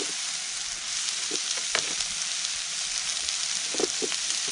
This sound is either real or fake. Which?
real